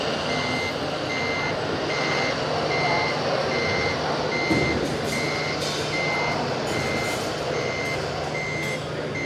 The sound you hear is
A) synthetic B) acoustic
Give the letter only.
B